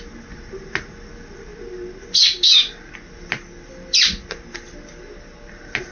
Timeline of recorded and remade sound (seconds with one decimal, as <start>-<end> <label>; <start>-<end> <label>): 0.0-5.9 recorded